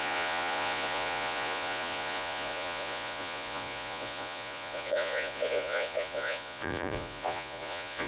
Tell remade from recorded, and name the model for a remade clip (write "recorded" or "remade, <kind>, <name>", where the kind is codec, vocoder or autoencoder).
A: remade, vocoder, Vocos